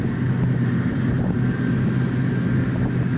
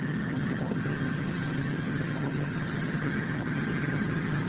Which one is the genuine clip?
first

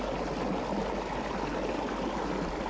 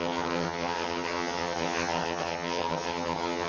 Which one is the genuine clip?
first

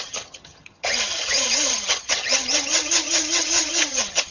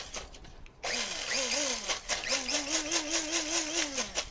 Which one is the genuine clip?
second